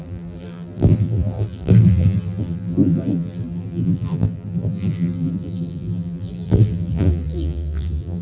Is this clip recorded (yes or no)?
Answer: no